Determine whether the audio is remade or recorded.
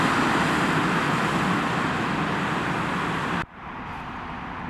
recorded